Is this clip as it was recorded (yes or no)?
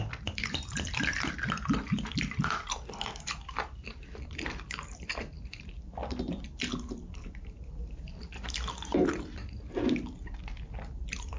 no